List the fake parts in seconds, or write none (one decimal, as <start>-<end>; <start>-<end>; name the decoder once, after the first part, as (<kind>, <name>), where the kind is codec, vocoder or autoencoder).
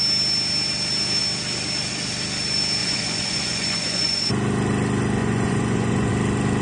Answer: 2.8-4.3 (vocoder, Vocos); 5.2-6.1